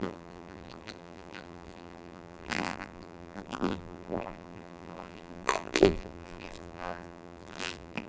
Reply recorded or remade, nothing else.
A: remade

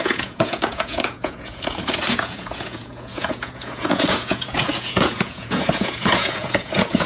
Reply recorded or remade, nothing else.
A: remade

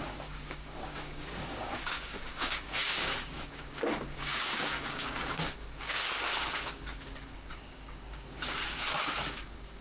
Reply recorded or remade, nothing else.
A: remade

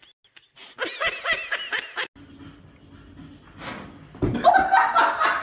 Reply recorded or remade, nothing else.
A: recorded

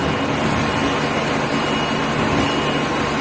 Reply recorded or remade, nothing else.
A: recorded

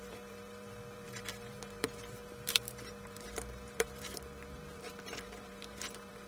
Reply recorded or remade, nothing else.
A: remade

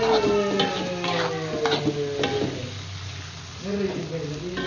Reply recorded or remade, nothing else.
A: recorded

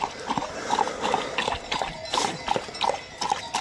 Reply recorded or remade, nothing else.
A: recorded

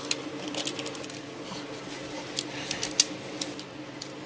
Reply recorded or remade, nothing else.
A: recorded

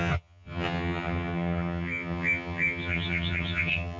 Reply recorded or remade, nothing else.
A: remade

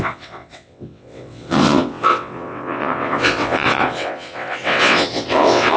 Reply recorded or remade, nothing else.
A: remade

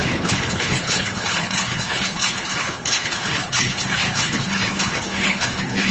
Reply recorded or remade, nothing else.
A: remade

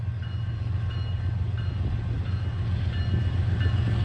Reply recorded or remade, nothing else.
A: recorded